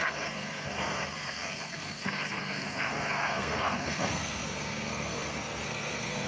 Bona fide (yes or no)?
no